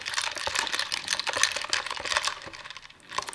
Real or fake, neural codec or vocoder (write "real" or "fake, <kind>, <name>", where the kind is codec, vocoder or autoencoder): real